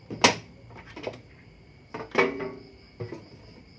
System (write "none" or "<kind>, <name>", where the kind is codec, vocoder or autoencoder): none